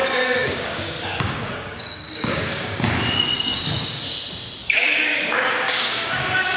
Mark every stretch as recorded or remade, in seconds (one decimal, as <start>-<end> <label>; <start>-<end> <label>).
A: 0.0-4.0 remade; 4.0-4.6 recorded; 4.6-6.6 remade